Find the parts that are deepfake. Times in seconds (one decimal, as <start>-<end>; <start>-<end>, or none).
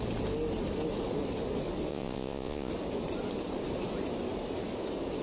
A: 1.9-2.7